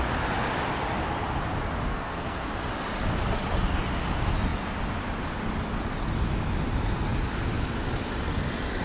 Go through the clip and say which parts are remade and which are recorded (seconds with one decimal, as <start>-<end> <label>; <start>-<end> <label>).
0.0-1.9 recorded; 1.9-2.5 remade; 2.5-8.8 recorded